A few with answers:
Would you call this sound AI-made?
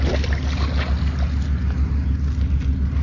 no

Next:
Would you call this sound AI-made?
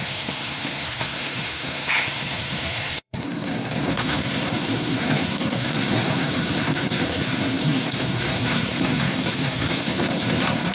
yes